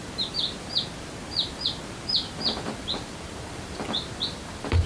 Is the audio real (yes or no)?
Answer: no